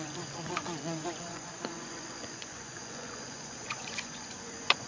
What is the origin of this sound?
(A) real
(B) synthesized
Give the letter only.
B